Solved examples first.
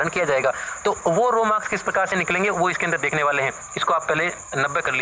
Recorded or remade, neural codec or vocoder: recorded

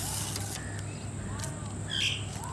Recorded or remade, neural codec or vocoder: recorded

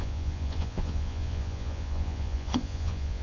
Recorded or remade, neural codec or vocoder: remade, vocoder, Vocos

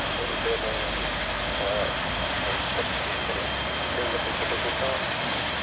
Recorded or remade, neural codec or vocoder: recorded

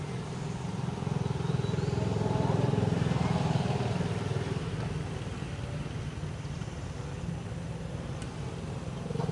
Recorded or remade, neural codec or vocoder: recorded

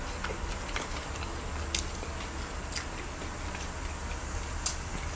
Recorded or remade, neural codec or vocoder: recorded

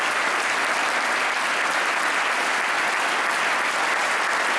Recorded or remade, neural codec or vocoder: recorded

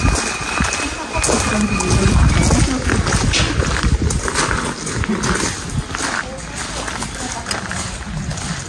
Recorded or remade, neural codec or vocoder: recorded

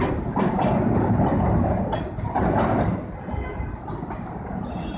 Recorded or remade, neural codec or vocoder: recorded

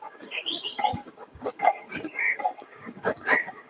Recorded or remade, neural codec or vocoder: remade, codec, DAC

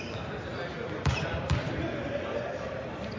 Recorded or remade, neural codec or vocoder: recorded